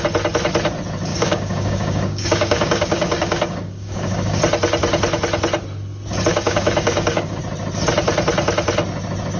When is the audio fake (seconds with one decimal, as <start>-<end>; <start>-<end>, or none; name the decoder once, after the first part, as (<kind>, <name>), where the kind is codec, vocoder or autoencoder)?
1.1-4.4 (codec, DAC); 6.3-7.4